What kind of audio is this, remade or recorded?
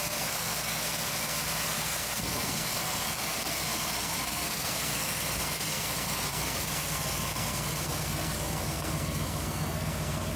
remade